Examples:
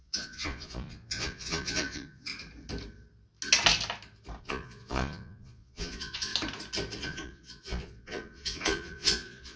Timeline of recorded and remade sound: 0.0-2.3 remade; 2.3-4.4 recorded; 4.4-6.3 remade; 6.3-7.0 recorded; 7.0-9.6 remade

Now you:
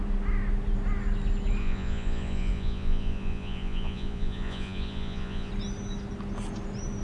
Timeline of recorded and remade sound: 0.0-1.6 recorded; 1.6-5.5 remade; 5.5-7.0 recorded

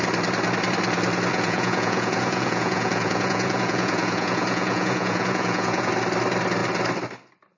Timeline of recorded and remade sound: 0.0-1.3 recorded; 1.3-5.9 remade; 5.9-7.6 recorded

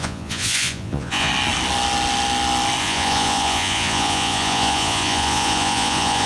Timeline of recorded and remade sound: 0.0-1.3 remade; 1.3-2.8 recorded; 2.8-6.3 remade

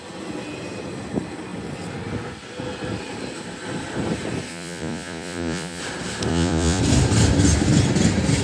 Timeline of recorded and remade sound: 0.0-4.5 recorded; 4.5-5.8 remade; 5.8-6.3 recorded; 6.3-6.8 remade; 6.8-8.4 recorded

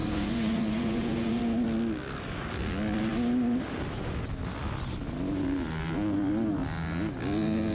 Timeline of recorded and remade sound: 0.0-1.4 remade; 1.4-7.7 recorded